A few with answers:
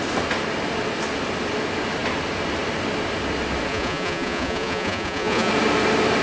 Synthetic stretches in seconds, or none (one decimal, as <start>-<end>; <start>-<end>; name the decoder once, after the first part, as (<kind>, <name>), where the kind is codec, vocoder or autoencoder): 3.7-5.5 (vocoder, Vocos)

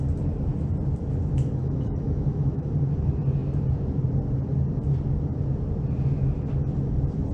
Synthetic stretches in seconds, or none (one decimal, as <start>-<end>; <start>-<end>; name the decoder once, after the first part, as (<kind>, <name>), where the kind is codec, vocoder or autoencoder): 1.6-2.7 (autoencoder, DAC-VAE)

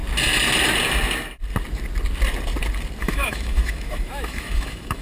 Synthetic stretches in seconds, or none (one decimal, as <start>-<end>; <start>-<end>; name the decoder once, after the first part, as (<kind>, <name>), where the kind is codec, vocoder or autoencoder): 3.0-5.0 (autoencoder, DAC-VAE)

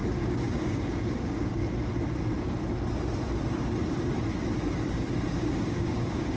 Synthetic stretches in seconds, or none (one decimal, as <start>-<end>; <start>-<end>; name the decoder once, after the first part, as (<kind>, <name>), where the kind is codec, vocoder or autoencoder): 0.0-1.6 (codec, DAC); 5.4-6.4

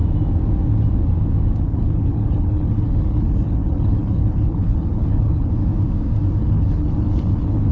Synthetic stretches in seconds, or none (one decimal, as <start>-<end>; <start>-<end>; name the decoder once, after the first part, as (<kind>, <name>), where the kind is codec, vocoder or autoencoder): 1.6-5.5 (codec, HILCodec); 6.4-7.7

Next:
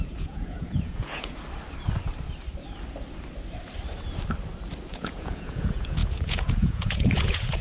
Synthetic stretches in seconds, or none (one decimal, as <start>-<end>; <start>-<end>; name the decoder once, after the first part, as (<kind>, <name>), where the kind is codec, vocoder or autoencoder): 0.0-1.4 (vocoder, Vocos); 4.9-7.6

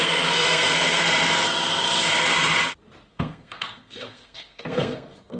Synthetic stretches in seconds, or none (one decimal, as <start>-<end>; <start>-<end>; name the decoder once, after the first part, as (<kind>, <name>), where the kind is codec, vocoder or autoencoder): 0.0-1.0 (codec, SNAC); 3.1-5.4

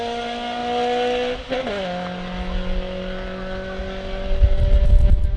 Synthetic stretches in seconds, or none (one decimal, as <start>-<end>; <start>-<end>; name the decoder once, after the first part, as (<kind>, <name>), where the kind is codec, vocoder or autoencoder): none